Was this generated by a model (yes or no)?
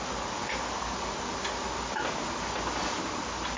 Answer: no